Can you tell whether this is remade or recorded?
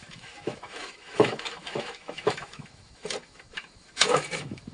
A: remade